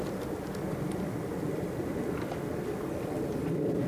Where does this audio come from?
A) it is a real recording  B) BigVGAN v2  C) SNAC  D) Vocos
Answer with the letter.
A